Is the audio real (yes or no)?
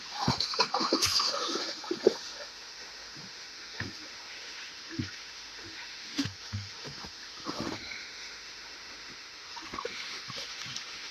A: no